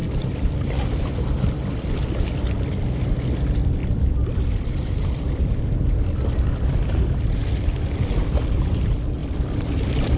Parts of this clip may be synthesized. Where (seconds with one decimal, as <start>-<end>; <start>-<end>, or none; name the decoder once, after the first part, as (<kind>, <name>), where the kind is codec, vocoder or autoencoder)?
0.0-1.0 (vocoder, BigVGAN v2); 3.8-6.7; 9.2-10.2